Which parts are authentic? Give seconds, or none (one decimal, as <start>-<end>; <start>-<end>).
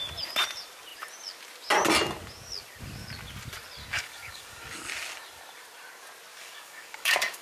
0.0-3.8; 4.6-6.3